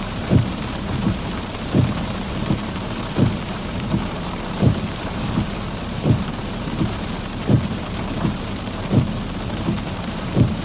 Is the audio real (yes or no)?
no